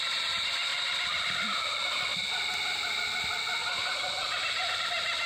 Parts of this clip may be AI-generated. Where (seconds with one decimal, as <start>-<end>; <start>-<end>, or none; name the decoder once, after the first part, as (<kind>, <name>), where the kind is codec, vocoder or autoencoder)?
0.7-1.6 (vocoder, BigVGAN v2); 2.1-3.0; 3.6-5.3

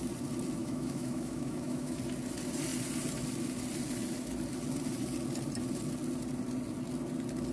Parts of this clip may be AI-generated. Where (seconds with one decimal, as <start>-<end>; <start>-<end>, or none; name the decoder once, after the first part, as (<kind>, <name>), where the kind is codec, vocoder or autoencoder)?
0.6-2.0 (autoencoder, DAC-VAE)

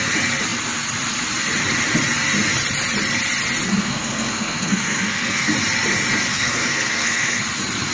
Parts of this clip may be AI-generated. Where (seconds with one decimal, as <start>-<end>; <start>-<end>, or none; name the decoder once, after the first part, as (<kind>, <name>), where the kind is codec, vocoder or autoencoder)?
3.8-5.5 (codec, SNAC); 6.3-7.4

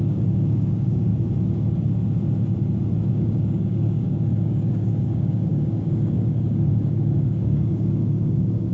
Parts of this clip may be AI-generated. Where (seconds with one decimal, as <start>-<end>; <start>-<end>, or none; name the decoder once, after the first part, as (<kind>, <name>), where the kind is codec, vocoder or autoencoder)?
0.0-1.1 (codec, DAC); 3.1-8.7

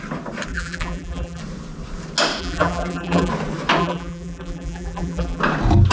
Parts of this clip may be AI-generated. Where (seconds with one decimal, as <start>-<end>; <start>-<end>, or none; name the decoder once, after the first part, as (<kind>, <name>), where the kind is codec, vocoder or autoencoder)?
0.5-1.4 (vocoder, BigVGAN v2); 2.4-3.3; 3.8-5.4

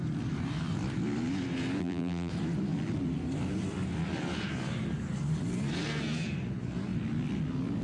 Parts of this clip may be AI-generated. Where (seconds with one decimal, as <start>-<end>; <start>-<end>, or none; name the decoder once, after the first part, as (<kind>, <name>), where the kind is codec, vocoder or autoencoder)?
1.8-2.3 (vocoder, BigVGAN v2)

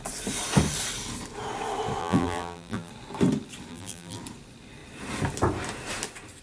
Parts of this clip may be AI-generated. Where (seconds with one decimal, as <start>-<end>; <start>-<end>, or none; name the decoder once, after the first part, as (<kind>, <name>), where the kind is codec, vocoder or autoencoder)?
2.0-2.9 (vocoder, BigVGAN v2); 3.7-4.2